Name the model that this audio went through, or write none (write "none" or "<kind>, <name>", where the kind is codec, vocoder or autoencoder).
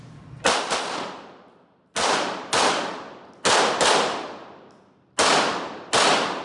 none